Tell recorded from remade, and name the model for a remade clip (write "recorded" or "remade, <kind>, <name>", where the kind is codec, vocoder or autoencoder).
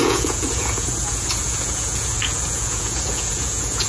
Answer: remade, vocoder, Vocos